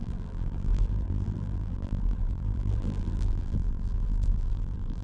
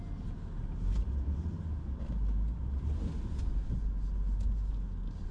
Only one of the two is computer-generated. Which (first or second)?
first